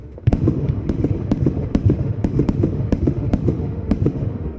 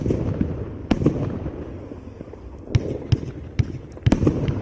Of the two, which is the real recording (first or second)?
second